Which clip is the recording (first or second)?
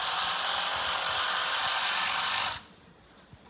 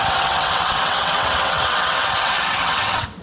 first